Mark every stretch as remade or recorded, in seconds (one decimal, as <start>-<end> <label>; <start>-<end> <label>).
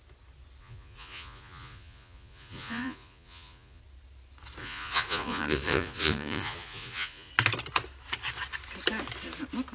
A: 0.0-0.6 recorded; 0.6-3.8 remade; 3.8-4.6 recorded; 4.6-7.3 remade; 7.3-9.7 recorded